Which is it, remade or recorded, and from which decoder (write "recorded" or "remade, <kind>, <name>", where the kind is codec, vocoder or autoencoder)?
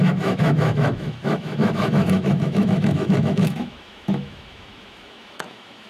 remade, autoencoder, DAC-VAE